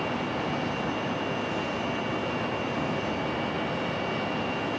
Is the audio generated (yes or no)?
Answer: no